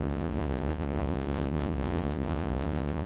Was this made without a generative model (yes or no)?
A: no